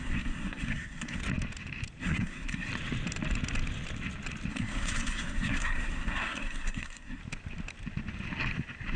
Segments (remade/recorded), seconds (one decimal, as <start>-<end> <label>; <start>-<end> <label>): 0.0-1.2 remade; 1.2-2.0 recorded; 2.0-2.7 remade; 2.7-4.5 recorded; 4.5-7.2 remade; 7.2-9.0 recorded